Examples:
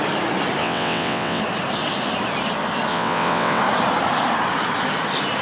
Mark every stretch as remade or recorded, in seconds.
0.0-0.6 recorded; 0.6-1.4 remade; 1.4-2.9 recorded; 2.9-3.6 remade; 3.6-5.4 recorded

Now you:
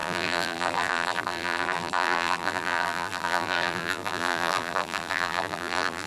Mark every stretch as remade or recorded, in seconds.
0.0-6.1 remade

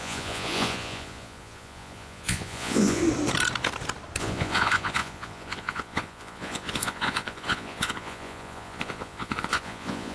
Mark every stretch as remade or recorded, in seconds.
0.0-3.0 remade; 3.0-4.2 recorded; 4.2-10.1 remade

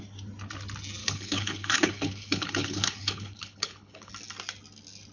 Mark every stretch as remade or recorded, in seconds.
0.0-1.0 recorded; 1.0-4.1 remade; 4.1-5.1 recorded

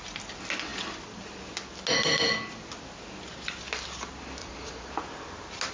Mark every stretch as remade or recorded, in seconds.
0.0-4.4 recorded; 4.4-4.9 remade; 4.9-5.7 recorded

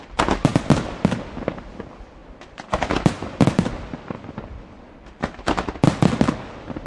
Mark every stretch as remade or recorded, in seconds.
0.0-6.9 recorded